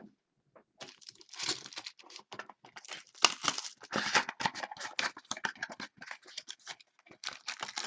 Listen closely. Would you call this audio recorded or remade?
recorded